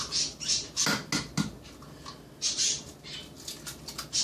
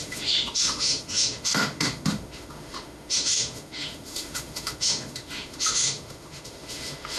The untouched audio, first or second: first